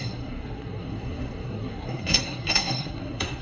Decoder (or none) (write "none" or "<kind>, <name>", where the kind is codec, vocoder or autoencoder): codec, SNAC